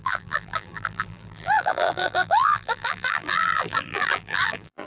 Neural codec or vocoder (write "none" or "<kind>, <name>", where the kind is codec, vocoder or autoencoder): vocoder, BigVGAN v2